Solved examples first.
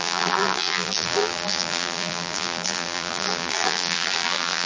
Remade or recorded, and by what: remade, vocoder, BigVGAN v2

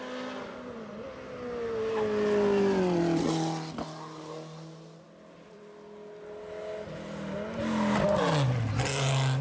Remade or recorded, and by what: recorded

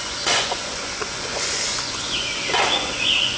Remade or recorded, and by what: remade, vocoder, Vocos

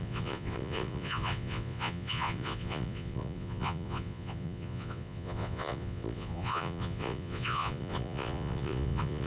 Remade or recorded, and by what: remade, vocoder, Vocos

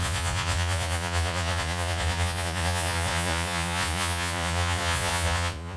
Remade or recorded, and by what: remade, vocoder, Vocos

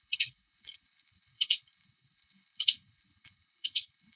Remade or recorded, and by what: remade, codec, HILCodec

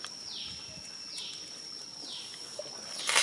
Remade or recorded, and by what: recorded